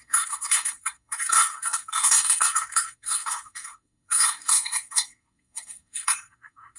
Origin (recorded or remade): remade